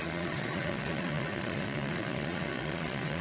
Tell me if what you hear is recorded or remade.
remade